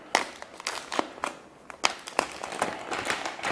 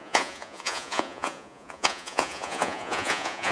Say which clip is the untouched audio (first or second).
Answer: first